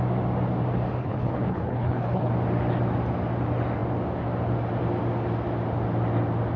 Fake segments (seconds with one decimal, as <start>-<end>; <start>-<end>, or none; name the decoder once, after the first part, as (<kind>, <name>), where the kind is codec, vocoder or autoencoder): 1.0-2.3 (codec, HILCodec)